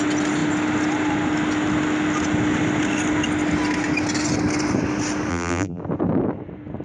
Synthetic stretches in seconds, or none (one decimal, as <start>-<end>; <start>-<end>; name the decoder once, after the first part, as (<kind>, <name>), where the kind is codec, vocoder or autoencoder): 5.3-5.8 (vocoder, BigVGAN v2)